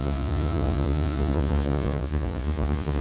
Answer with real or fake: fake